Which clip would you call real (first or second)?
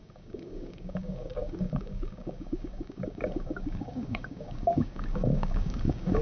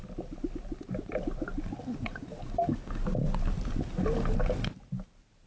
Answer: second